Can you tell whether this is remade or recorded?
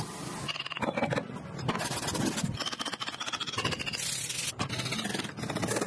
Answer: recorded